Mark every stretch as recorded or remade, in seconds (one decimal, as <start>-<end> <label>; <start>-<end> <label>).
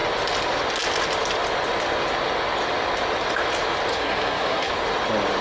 0.0-3.9 recorded; 3.9-4.7 remade; 4.7-5.4 recorded